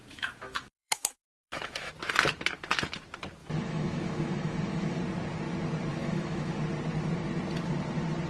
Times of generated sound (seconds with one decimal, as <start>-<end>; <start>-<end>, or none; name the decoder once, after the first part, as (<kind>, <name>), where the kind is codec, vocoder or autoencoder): 0.0-1.9 (autoencoder, DAC-VAE); 3.4-5.0; 5.9-6.6